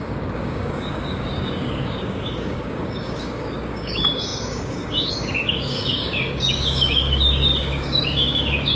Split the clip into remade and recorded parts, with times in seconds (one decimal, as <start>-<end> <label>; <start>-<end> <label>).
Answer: 0.0-8.8 remade